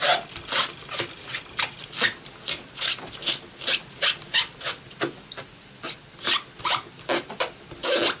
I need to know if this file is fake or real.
real